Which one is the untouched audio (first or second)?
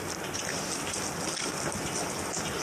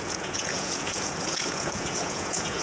first